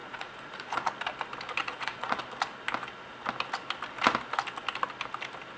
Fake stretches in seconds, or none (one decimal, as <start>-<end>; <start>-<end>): 0.0-0.9; 1.6-2.2